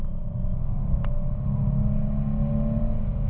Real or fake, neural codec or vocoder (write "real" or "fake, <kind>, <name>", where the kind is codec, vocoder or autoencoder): real